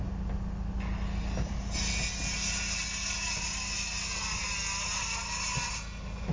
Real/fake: real